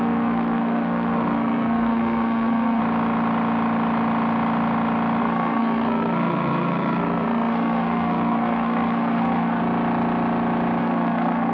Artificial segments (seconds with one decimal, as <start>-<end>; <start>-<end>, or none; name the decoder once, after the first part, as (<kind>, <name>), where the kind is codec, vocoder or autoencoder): 0.0-2.8 (codec, SNAC); 5.2-9.6; 10.8-11.5